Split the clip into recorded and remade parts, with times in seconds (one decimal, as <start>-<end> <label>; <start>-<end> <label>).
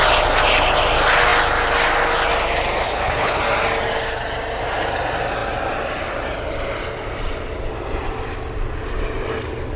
0.0-2.8 recorded; 2.8-3.4 remade; 3.4-9.8 recorded